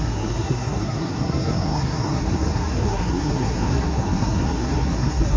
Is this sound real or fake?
fake